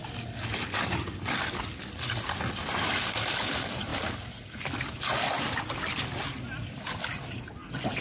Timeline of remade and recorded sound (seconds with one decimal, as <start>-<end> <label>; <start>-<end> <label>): 0.0-8.0 recorded